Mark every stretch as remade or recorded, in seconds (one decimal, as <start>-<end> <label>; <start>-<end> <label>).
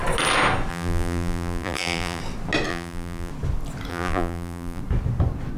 0.0-0.7 recorded; 0.7-2.2 remade; 2.2-2.7 recorded; 2.7-3.3 remade; 3.3-3.9 recorded; 3.9-4.8 remade; 4.8-5.6 recorded